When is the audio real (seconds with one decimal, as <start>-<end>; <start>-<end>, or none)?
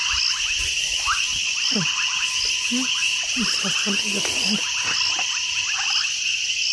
0.0-6.7